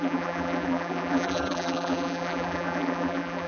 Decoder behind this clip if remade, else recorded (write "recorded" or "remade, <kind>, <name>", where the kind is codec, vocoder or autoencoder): remade, vocoder, BigVGAN v2